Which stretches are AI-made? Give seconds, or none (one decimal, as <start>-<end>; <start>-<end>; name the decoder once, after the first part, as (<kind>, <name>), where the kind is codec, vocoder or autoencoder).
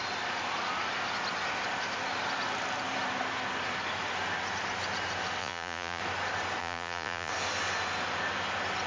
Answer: 5.4-6.0 (vocoder, Vocos); 6.6-7.3